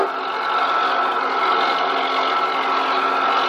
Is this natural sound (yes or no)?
yes